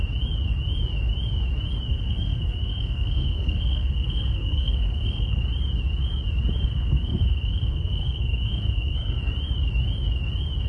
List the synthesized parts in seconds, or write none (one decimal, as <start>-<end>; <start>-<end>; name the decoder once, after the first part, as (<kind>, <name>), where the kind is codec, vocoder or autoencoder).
1.9-5.4 (codec, SNAC); 6.6-9.2

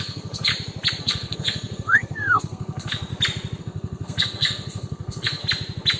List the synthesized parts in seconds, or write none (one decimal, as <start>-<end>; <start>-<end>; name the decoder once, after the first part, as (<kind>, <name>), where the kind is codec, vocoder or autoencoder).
0.0-0.5 (codec, SNAC); 1.0-3.1; 3.6-5.4

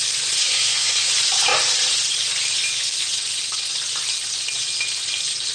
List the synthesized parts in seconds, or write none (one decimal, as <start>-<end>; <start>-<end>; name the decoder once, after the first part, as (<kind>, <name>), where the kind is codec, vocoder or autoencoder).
0.4-1.1 (codec, SNAC)

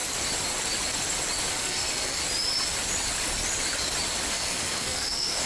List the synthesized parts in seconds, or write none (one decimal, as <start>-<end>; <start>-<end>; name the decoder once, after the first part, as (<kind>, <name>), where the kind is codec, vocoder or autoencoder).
1.5-2.2 (codec, SNAC); 4.3-5.5